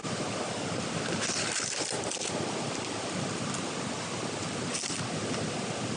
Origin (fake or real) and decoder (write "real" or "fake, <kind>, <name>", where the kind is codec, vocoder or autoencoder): real